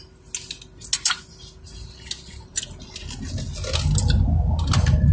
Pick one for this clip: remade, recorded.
recorded